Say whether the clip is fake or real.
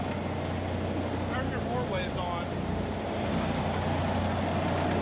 real